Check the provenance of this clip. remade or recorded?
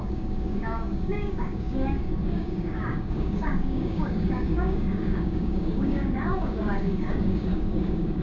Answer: remade